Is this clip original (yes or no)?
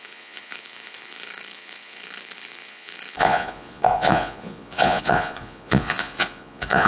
no